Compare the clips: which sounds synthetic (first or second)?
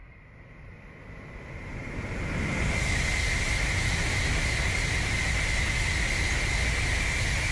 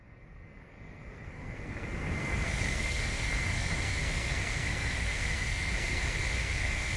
second